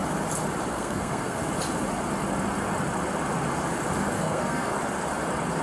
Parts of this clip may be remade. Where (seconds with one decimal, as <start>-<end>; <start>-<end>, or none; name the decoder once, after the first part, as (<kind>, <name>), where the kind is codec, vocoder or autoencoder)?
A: 0.7-1.4 (codec, SNAC); 4.2-4.7